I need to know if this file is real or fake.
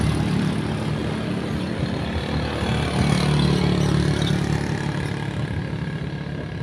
real